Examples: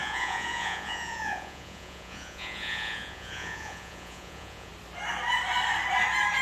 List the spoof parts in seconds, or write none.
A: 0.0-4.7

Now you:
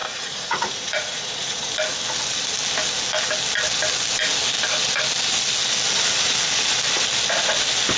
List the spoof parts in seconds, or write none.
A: 0.0-1.7